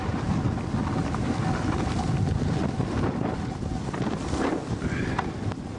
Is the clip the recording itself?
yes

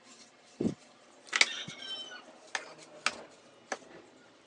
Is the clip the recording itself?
yes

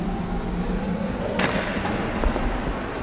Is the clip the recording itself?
yes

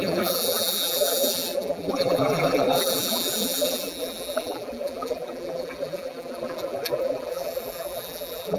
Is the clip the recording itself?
no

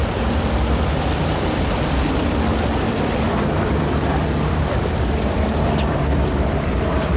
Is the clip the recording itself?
no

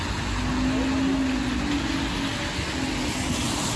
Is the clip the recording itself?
yes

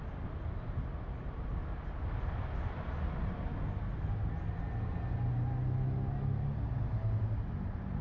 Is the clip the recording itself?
yes